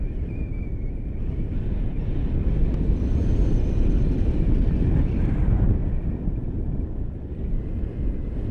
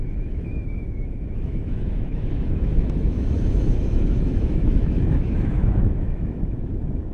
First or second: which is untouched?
first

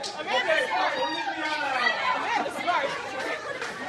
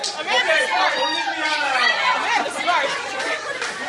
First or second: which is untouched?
second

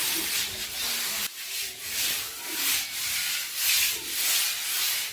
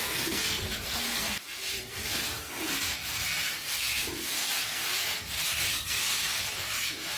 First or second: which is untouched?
first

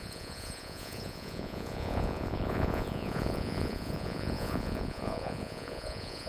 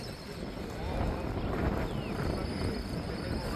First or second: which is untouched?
second